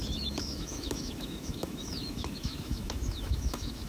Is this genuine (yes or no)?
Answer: no